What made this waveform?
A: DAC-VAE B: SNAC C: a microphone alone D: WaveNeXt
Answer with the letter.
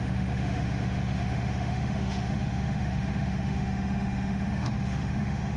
A